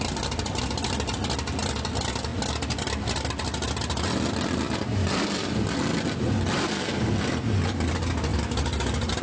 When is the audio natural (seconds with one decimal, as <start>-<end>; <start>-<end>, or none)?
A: 0.0-9.2